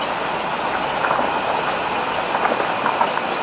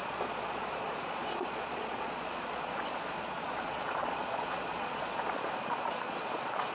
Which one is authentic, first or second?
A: first